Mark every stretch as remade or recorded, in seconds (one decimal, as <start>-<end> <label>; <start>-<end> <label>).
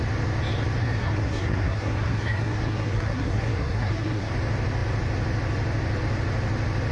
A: 0.0-0.8 recorded; 0.8-4.3 remade; 4.3-6.9 recorded